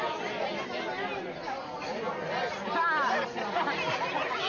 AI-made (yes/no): no